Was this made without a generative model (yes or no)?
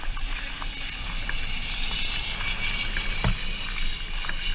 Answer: yes